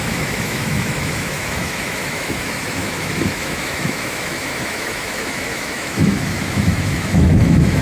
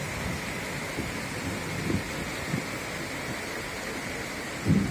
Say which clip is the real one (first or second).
second